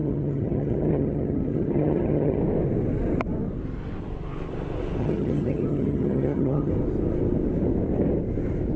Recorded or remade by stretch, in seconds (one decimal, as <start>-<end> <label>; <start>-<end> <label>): 0.0-2.4 remade; 2.4-5.0 recorded; 5.0-6.7 remade; 6.7-8.8 recorded